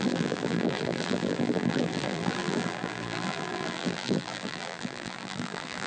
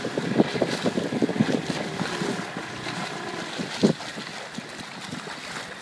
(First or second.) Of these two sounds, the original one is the second